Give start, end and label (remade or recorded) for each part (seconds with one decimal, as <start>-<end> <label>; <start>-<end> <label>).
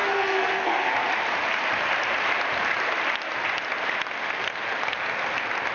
0.0-0.9 remade; 0.9-5.7 recorded